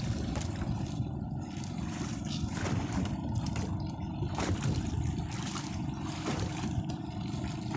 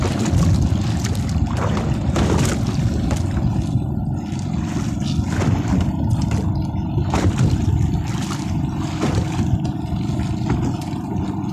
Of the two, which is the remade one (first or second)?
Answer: first